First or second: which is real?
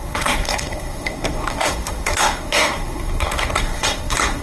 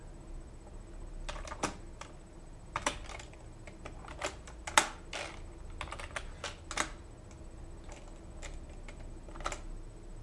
second